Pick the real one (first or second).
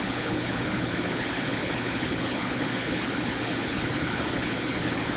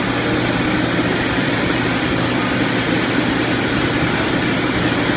second